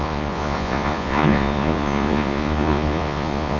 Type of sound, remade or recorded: remade